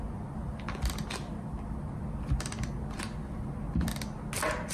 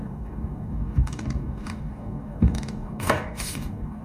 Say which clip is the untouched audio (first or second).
first